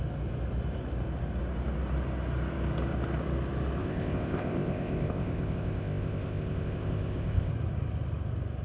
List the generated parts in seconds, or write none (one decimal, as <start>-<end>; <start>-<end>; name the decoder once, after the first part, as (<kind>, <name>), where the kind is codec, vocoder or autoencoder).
3.8-7.5 (codec, ZipCodec)